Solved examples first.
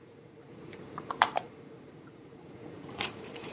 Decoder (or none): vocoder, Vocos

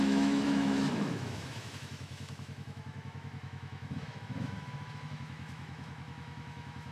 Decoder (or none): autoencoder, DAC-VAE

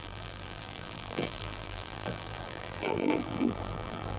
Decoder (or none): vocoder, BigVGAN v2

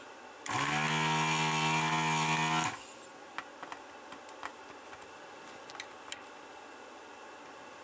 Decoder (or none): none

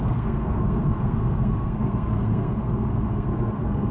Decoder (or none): codec, SNAC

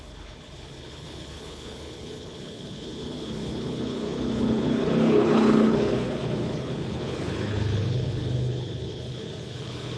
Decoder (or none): codec, HILCodec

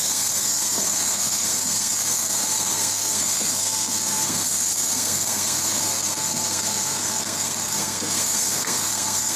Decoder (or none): codec, SNAC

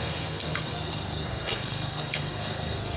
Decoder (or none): codec, SNAC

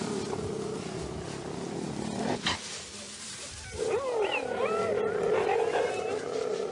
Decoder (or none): none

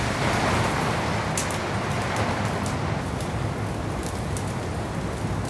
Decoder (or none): none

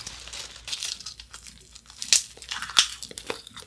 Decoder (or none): none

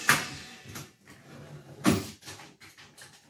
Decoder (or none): none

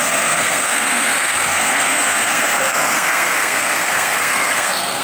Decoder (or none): codec, SNAC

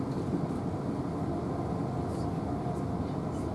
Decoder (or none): none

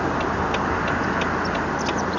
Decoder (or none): none